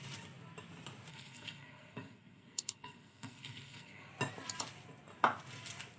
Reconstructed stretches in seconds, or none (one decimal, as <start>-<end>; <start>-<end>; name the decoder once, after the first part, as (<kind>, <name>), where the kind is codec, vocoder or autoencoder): 1.1-4.1 (codec, SNAC)